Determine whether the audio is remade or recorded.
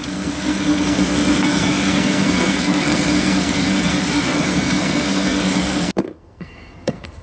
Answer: remade